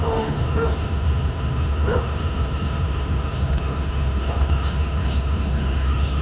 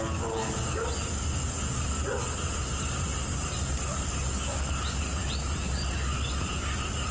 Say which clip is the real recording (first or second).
second